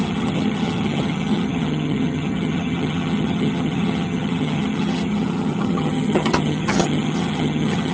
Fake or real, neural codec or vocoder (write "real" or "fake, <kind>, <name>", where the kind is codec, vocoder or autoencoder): fake, vocoder, HiFi-GAN